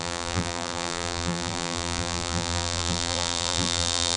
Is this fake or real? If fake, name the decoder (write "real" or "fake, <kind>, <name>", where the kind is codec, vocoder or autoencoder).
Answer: fake, vocoder, BigVGAN v2